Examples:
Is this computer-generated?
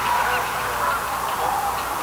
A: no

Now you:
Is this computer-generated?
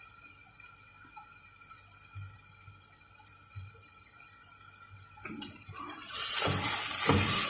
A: no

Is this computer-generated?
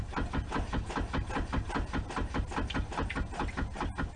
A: no